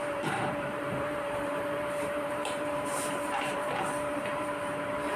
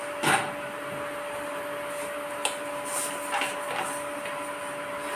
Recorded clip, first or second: second